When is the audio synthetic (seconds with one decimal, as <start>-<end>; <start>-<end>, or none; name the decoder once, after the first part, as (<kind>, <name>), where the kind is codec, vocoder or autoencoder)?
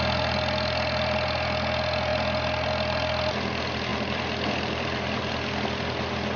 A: none